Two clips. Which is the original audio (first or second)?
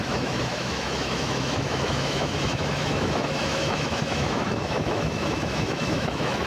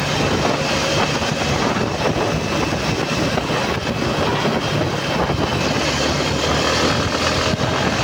second